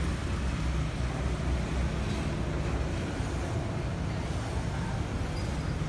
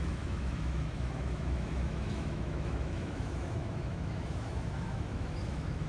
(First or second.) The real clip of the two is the first